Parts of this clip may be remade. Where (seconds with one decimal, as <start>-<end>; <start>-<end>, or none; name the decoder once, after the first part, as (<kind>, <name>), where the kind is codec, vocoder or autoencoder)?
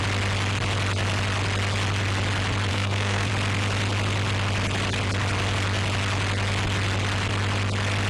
2.7-3.3 (codec, SNAC)